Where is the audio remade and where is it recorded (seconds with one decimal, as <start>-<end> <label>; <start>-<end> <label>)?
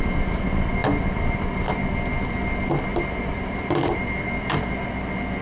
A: 0.0-2.9 recorded; 2.9-4.9 remade; 4.9-5.4 recorded